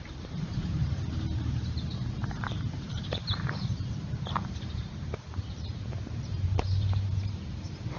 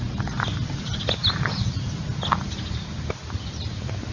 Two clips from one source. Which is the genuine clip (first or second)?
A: second